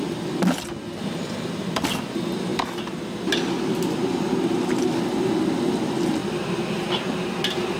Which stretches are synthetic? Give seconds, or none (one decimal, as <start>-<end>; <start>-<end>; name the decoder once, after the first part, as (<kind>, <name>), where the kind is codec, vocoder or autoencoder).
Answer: none